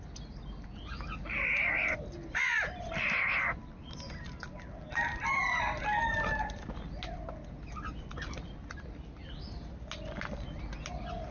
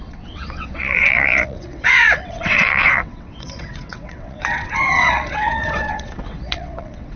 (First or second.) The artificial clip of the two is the second